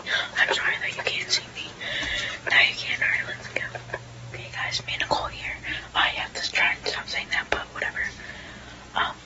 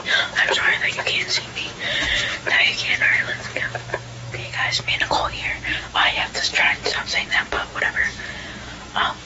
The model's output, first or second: second